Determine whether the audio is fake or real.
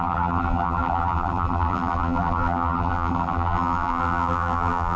fake